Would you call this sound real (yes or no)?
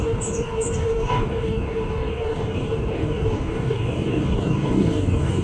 no